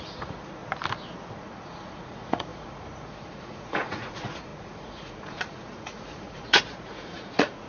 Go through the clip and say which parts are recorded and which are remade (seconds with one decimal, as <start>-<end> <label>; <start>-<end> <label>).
0.0-0.6 remade; 0.6-1.3 recorded; 1.3-7.7 remade